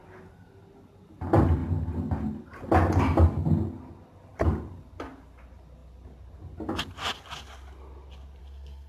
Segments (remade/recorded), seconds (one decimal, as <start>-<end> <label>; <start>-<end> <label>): 0.0-8.4 recorded; 8.4-8.9 remade